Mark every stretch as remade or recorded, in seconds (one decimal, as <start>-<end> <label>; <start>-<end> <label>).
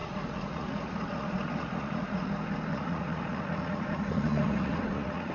0.0-2.3 remade; 2.3-2.7 recorded; 2.7-5.3 remade